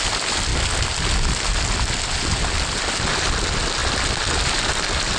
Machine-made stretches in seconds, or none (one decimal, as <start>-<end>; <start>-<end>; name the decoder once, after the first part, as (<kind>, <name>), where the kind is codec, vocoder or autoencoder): none